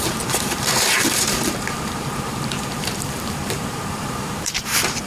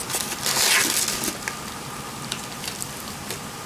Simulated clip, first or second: first